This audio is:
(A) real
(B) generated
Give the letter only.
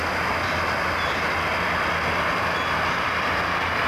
A